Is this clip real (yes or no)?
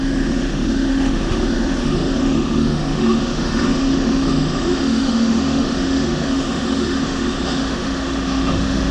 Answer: no